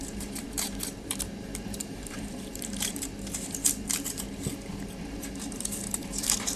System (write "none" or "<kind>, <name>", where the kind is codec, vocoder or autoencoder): vocoder, BigVGAN v2